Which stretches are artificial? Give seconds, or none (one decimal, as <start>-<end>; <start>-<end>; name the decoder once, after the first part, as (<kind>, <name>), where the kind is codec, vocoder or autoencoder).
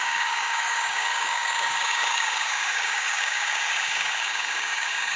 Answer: 0.0-5.2 (codec, DAC)